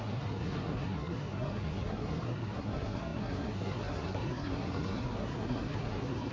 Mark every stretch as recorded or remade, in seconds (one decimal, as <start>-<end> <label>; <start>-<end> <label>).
0.0-6.3 remade